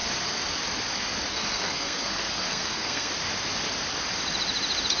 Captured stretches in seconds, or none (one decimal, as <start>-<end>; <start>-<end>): 0.0-1.3; 3.1-5.0